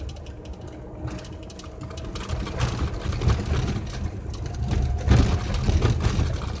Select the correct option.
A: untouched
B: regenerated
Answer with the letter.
A